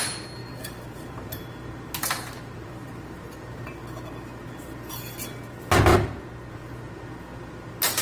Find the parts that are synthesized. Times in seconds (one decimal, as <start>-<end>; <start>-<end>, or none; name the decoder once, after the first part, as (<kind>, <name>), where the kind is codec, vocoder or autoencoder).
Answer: 0.4-3.8 (vocoder, BigVGAN v2)

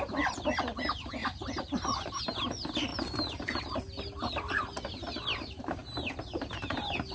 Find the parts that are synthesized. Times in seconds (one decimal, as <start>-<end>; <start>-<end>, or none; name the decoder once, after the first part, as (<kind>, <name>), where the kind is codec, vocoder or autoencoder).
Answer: 1.2-2.2 (vocoder, BigVGAN v2); 2.9-3.6

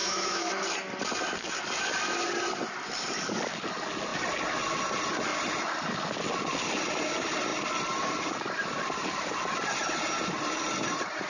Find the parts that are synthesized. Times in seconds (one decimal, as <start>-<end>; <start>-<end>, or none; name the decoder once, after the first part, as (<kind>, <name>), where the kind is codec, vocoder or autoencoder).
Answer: 0.0-0.6 (autoencoder, DAC-VAE)

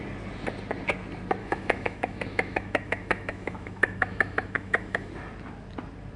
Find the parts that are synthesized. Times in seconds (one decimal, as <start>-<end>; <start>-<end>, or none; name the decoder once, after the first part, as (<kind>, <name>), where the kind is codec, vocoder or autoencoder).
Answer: 1.4-5.1 (autoencoder, DAC-VAE)

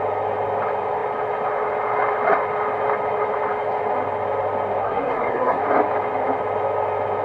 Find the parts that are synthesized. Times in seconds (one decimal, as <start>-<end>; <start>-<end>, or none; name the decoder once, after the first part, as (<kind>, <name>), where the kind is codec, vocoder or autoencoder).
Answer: 4.8-5.6 (codec, SNAC)

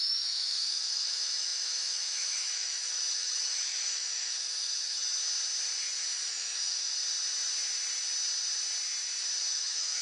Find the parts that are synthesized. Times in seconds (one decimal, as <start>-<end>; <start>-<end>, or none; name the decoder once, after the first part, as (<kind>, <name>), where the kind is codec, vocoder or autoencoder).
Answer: 0.0-5.2 (autoencoder, DAC-VAE); 6.3-6.9; 9.4-10.0

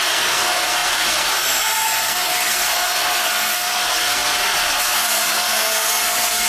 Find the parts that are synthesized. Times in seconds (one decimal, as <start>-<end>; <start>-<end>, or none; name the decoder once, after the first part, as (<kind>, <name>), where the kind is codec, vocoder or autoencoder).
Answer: 0.0-6.5 (codec, SNAC)